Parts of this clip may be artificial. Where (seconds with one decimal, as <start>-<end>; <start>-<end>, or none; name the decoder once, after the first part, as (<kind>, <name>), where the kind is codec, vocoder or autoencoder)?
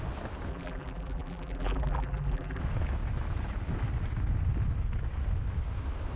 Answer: 0.5-2.6 (vocoder, BigVGAN v2)